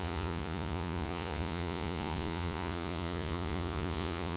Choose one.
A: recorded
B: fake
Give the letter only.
B